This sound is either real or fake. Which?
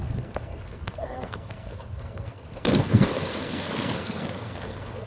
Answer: fake